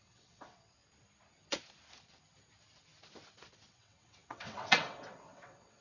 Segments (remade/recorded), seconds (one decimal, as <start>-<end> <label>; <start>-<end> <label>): 0.0-0.8 remade; 0.8-3.7 recorded; 3.7-5.8 remade